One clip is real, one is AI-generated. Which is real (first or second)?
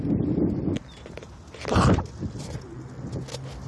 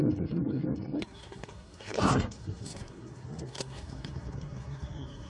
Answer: first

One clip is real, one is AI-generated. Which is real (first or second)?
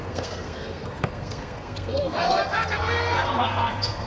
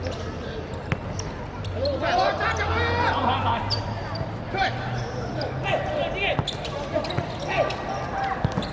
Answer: second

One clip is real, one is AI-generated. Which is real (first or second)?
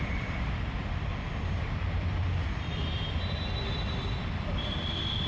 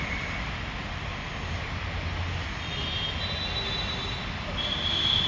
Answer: second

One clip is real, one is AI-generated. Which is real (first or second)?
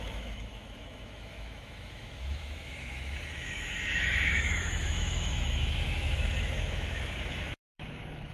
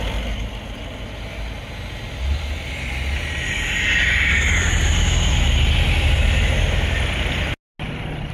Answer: second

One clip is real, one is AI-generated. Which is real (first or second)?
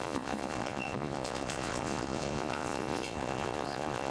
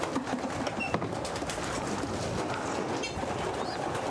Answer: second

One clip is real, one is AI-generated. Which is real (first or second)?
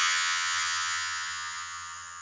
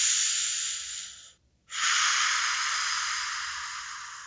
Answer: second